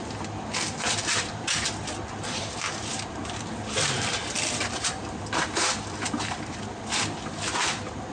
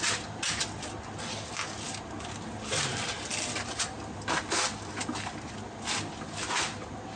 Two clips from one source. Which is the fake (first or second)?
first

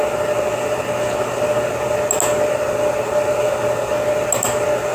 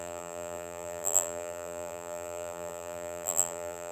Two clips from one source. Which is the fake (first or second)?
second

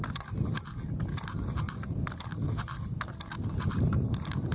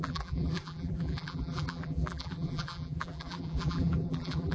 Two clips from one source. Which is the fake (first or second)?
second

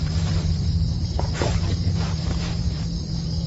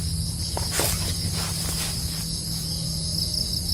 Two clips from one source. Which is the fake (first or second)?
first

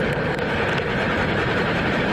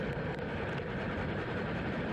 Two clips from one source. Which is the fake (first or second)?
second